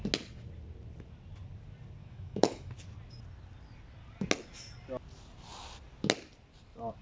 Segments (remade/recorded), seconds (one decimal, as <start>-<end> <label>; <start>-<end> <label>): 0.0-2.0 recorded; 2.0-2.7 remade; 2.7-7.0 recorded